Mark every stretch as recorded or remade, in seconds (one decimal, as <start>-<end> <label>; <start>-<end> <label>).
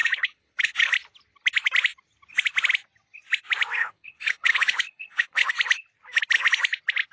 0.0-0.9 remade; 0.9-3.8 recorded; 3.8-5.5 remade; 5.5-7.1 recorded